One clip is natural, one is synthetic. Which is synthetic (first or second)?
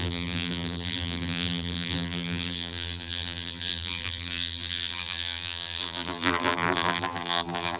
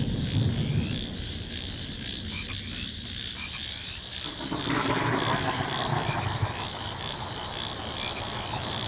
first